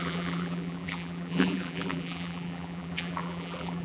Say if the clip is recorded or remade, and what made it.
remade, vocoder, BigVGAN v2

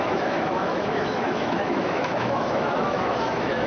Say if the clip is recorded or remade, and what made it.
remade, autoencoder, DAC-VAE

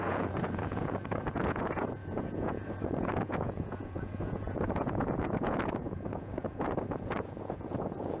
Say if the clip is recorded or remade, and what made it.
remade, vocoder, Vocos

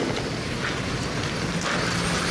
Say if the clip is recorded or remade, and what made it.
recorded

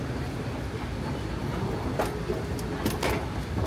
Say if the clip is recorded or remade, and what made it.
recorded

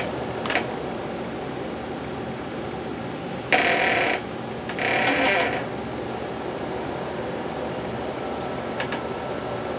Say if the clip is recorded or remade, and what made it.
recorded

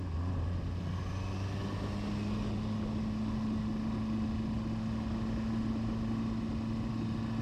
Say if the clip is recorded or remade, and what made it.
recorded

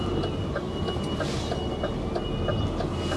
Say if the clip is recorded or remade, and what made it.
recorded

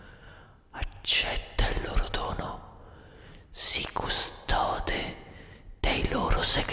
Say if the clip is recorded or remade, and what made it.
recorded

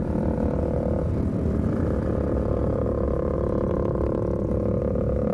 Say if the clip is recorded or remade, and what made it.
recorded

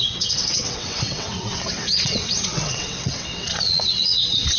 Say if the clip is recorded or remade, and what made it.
remade, vocoder, WaveNeXt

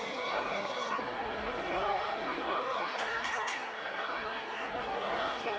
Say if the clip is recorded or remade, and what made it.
remade, codec, SNAC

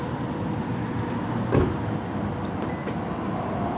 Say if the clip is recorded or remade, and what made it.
recorded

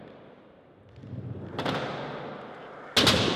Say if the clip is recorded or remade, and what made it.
recorded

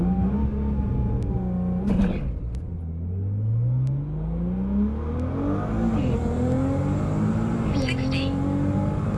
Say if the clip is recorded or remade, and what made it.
recorded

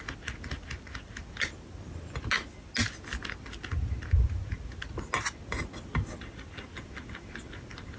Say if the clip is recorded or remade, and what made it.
recorded